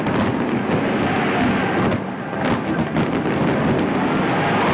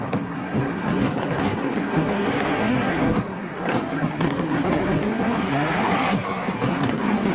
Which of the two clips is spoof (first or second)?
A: second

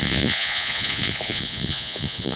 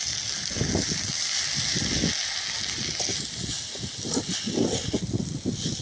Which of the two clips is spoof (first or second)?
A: first